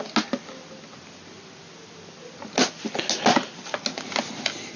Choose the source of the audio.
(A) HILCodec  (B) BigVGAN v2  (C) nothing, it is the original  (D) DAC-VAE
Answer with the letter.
C